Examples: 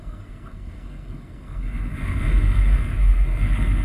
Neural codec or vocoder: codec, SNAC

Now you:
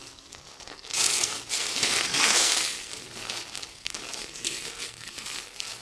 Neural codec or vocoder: codec, SNAC